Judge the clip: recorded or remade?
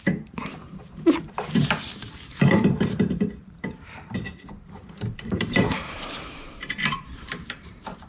remade